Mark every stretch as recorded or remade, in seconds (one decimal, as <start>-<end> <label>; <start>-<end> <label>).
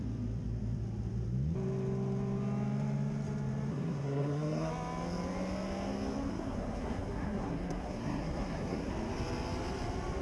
0.0-3.7 recorded; 3.7-4.7 remade; 4.7-6.3 recorded; 6.3-8.9 remade; 8.9-10.2 recorded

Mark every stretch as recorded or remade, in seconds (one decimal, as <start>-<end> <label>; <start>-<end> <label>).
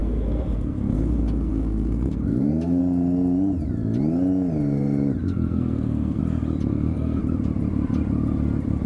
0.0-2.8 remade; 2.8-5.2 recorded; 5.2-6.2 remade; 6.2-6.7 recorded; 6.7-7.2 remade; 7.2-8.9 recorded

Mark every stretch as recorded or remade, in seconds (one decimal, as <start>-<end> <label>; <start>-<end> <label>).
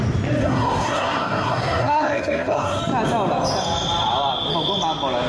0.0-0.4 recorded; 0.4-2.8 remade; 2.8-5.3 recorded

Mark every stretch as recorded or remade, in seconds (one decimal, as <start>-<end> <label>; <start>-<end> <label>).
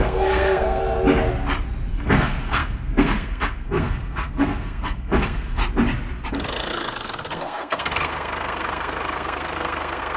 0.0-0.8 remade; 0.8-1.9 recorded; 1.9-5.6 remade; 5.6-6.3 recorded; 6.3-10.2 remade